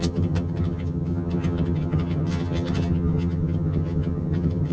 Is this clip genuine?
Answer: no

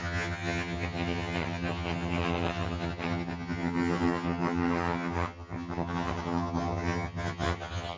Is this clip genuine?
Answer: no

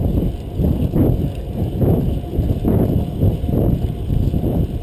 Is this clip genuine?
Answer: yes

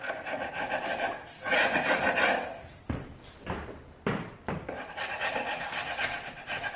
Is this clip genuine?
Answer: yes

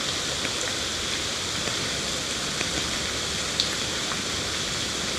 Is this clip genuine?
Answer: yes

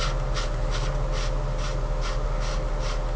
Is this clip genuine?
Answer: yes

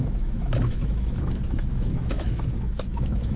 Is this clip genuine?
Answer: no